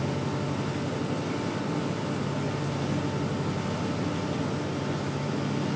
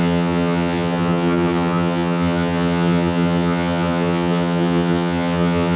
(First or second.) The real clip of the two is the first